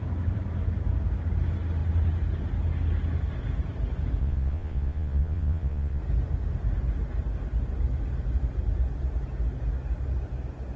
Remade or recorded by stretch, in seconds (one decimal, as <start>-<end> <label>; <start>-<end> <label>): 0.0-4.2 recorded; 4.2-6.0 remade; 6.0-10.8 recorded